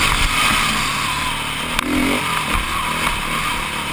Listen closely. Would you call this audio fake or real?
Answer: real